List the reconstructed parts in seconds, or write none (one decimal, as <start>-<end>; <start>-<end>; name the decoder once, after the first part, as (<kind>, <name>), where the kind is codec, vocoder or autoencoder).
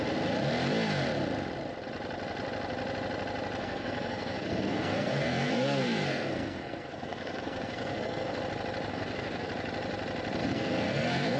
3.6-8.4 (codec, SNAC); 8.9-9.5; 10.4-11.4